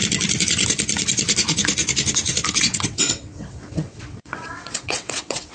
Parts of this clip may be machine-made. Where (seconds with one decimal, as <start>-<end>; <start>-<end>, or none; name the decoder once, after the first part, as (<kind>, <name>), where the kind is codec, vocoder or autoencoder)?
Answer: 2.6-5.5 (vocoder, WaveNeXt)